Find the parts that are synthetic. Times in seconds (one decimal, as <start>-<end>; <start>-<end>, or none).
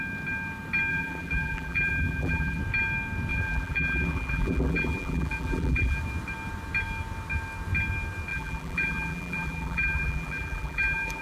0.9-2.6; 3.3-6.0; 8.3-11.2